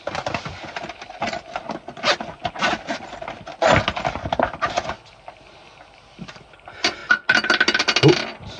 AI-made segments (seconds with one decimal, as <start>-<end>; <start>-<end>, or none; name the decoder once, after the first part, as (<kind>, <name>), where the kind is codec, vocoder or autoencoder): none